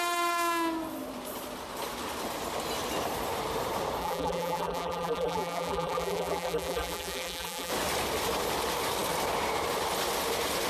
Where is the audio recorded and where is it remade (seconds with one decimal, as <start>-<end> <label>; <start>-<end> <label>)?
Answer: 0.0-4.0 recorded; 4.0-7.7 remade; 7.7-10.7 recorded